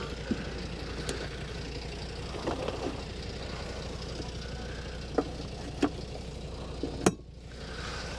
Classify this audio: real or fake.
real